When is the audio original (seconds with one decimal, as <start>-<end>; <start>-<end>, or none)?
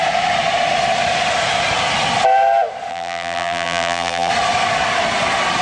0.0-2.9; 4.3-5.6